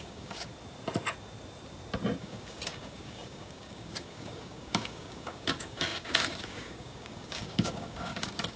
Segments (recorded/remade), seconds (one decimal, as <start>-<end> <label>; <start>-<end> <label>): 0.0-0.5 remade; 0.5-2.2 recorded; 2.2-8.6 remade